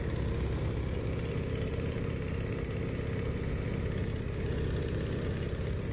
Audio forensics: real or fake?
real